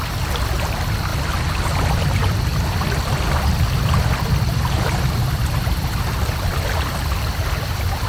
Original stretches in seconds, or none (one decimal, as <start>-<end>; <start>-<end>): 0.0-8.1